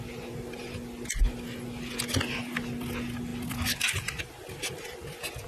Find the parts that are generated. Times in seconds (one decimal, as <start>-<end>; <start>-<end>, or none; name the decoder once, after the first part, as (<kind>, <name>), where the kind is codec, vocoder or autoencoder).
none

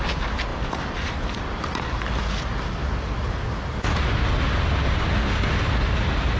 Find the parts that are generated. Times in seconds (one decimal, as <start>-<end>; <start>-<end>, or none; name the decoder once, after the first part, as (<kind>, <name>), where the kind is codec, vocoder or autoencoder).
0.5-2.2 (vocoder, BigVGAN v2)

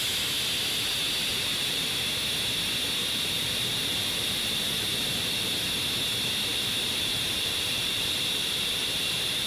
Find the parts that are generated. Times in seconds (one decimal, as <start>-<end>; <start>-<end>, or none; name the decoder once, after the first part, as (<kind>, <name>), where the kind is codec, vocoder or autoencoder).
1.3-1.9 (vocoder, BigVGAN v2); 3.0-5.5; 6.5-9.5

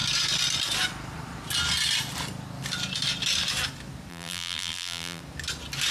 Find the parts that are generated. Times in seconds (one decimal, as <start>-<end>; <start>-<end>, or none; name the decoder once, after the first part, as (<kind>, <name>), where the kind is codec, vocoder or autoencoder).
4.1-5.2 (vocoder, BigVGAN v2)

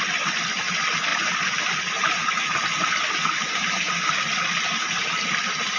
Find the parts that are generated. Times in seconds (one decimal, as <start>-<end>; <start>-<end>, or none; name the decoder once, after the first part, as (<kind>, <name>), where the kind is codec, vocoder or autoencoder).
0.0-1.1 (vocoder, BigVGAN v2); 4.6-5.8

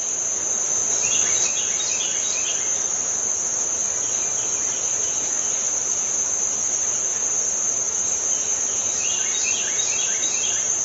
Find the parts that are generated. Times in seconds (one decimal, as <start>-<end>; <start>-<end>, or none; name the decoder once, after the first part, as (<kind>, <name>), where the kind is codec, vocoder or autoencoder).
0.0-0.8 (vocoder, BigVGAN v2); 5.0-10.8

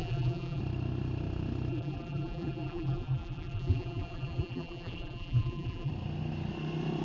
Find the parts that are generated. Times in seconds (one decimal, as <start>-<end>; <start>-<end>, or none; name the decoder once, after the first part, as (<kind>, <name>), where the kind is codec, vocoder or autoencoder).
0.0-0.6 (vocoder, BigVGAN v2); 1.7-5.9